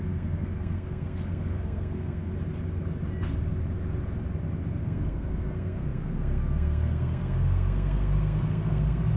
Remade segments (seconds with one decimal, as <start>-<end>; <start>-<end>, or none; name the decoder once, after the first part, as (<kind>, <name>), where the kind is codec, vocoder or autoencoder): 0.0-2.3 (codec, SNAC); 4.8-9.2